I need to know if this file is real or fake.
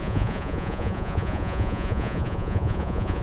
fake